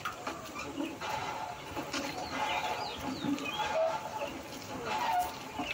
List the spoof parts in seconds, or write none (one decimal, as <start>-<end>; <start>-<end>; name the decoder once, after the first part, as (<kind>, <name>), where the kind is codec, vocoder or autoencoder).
none